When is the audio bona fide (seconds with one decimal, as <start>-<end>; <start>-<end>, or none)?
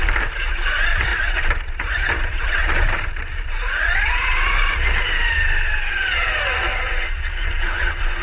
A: 0.0-1.1; 5.9-8.2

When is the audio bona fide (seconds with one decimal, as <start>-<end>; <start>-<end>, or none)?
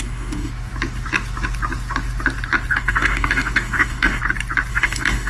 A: 0.5-2.7; 4.2-4.7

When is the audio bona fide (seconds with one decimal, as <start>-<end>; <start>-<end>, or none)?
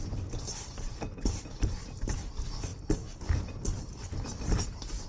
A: 0.0-5.1